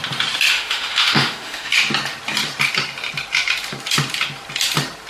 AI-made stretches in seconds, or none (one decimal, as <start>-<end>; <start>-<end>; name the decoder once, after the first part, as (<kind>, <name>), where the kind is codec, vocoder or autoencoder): 0.5-1.7 (autoencoder, DAC-VAE)